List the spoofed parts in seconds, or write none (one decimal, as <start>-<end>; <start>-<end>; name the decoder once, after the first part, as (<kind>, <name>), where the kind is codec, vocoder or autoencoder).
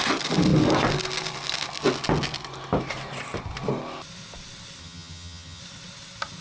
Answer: 4.8-5.6 (vocoder, HiFi-GAN)